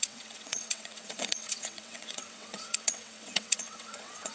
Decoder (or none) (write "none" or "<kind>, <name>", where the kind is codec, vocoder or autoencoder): vocoder, WaveNeXt